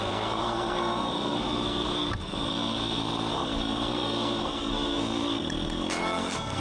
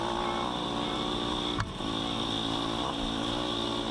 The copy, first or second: first